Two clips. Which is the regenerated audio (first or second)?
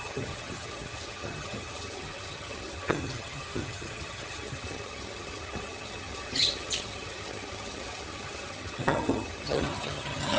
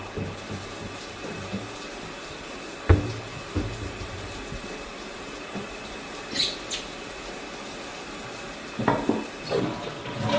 first